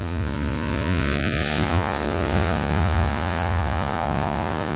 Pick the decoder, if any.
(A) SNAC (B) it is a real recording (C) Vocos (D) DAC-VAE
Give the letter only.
C